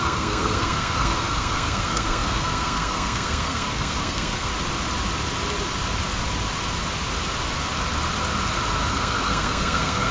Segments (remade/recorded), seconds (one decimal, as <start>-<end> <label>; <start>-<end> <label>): 0.0-4.5 remade; 4.5-8.9 recorded; 8.9-10.1 remade